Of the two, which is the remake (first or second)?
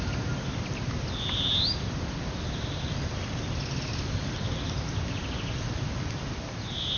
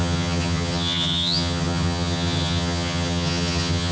second